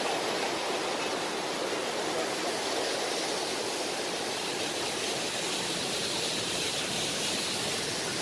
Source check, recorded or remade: recorded